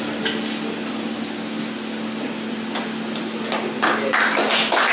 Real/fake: real